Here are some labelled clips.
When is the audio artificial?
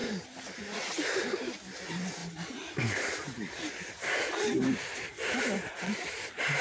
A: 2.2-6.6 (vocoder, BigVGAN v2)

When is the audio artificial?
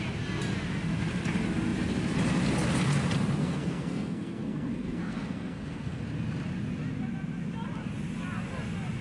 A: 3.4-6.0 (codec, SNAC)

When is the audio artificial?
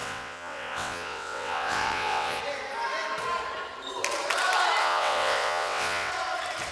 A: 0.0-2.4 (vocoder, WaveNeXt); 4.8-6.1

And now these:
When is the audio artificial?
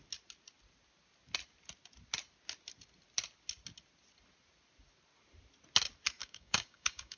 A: 6.2-7.2 (codec, DAC)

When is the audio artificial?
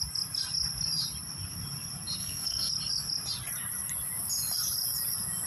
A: 2.2-2.7 (codec, SNAC)